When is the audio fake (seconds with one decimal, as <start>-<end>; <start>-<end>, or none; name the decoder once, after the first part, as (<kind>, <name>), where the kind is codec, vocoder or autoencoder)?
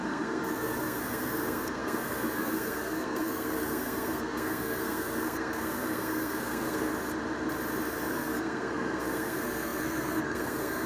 0.0-6.9 (codec, SNAC); 8.1-10.9